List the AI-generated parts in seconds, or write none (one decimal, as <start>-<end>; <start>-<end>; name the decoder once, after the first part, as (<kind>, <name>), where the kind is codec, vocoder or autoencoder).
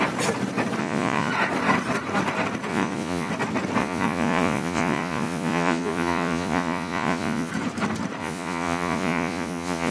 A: 0.8-1.3 (vocoder, Vocos); 2.7-3.3; 3.8-7.5; 8.2-9.9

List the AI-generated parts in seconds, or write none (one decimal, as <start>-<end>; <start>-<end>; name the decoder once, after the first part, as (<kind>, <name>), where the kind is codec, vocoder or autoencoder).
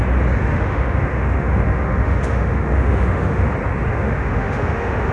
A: 0.4-3.5 (autoencoder, DAC-VAE); 3.9-5.1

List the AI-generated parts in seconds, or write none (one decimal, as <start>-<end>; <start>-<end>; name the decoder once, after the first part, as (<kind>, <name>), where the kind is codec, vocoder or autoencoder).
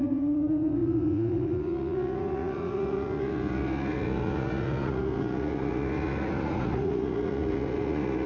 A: 0.0-8.3 (vocoder, Vocos)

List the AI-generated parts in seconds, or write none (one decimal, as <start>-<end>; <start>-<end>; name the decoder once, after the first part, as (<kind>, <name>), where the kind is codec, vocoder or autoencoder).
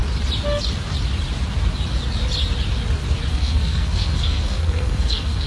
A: 3.3-5.5 (codec, SNAC)